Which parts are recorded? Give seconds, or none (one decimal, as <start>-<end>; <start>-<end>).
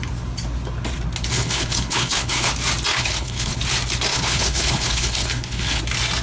0.0-1.3; 2.5-2.9; 3.6-4.1; 5.8-6.2